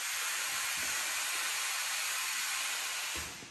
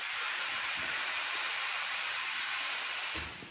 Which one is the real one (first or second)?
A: first